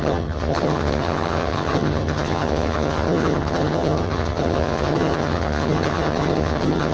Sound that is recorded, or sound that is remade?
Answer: remade